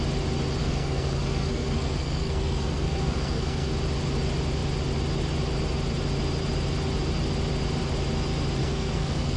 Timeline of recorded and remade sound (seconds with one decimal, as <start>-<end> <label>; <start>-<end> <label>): 0.0-0.6 recorded; 0.6-3.7 remade; 3.7-8.6 recorded; 8.6-9.4 remade